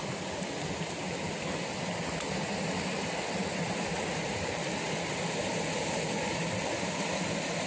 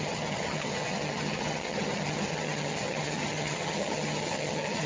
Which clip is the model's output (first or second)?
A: second